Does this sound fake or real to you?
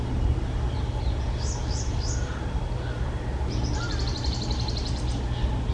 real